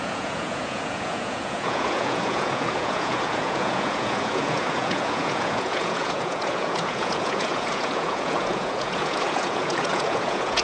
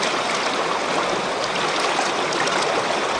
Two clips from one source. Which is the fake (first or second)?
first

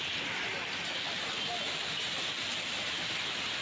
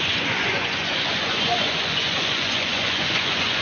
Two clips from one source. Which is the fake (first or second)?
second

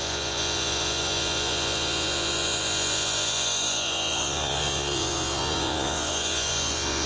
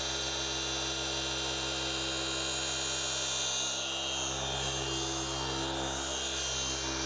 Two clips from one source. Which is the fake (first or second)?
first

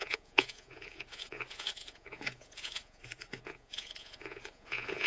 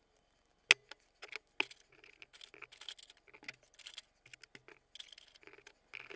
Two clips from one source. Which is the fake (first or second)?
first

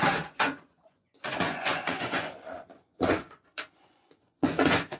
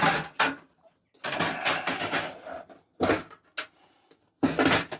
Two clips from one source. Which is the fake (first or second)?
first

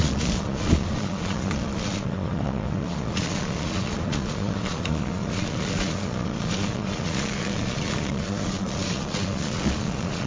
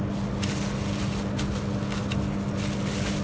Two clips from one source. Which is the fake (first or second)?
first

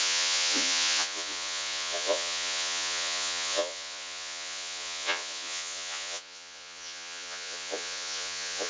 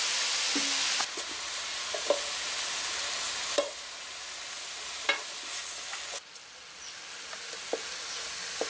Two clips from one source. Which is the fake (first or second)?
first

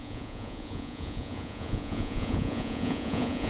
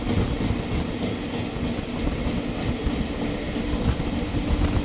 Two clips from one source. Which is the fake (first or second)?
first